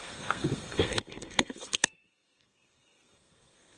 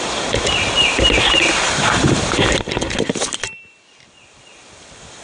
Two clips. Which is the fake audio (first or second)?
first